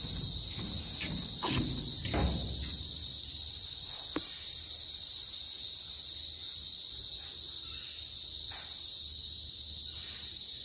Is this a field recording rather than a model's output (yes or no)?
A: yes